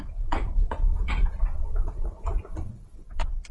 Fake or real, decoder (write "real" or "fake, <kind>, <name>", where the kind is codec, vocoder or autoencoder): fake, vocoder, Vocos